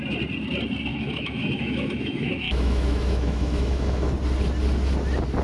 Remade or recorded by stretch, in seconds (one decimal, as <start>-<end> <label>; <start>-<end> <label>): 0.0-0.9 recorded; 0.9-4.1 remade; 4.1-5.4 recorded